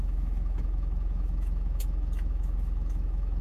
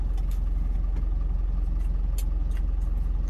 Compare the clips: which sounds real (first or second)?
second